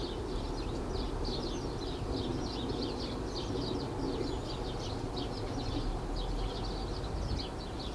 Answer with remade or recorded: recorded